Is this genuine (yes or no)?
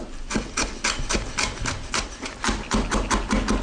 yes